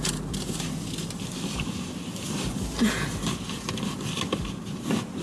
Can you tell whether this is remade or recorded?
recorded